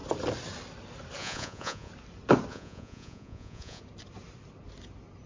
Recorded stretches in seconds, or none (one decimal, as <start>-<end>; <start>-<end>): 0.0-1.2; 1.9-2.5; 3.8-5.3